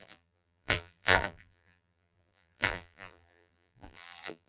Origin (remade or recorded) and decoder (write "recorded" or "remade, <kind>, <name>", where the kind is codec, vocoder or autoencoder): remade, vocoder, BigVGAN v2